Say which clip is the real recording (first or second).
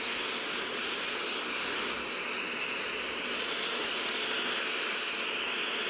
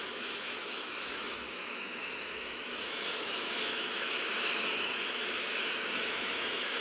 first